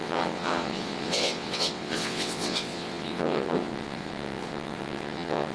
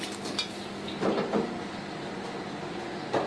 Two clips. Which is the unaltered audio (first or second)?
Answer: second